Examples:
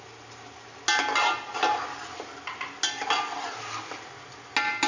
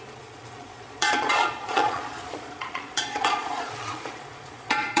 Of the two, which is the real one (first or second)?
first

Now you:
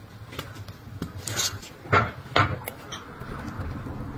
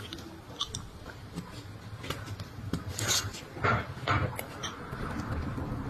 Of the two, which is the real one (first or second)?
first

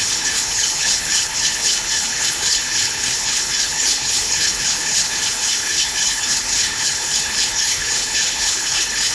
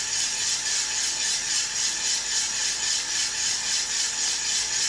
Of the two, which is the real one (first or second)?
second